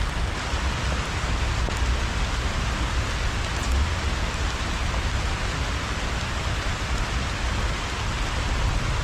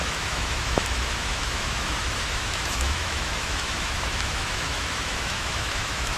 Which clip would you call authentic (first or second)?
first